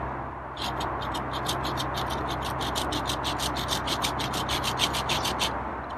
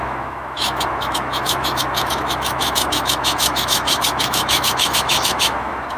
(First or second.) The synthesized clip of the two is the second